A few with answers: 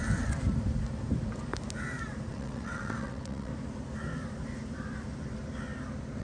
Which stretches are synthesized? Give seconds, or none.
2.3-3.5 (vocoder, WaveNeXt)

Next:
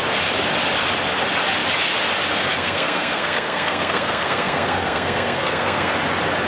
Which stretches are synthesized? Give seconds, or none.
2.5-5.9 (codec, SNAC)

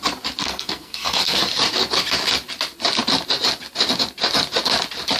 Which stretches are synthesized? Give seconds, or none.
0.4-1.4 (codec, SNAC)